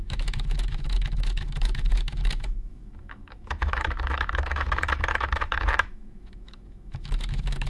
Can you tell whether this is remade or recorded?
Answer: remade